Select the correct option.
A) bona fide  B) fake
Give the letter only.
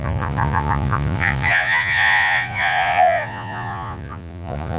B